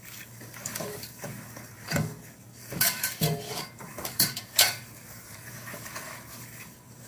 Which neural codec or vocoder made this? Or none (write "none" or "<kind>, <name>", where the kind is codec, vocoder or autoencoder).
codec, DAC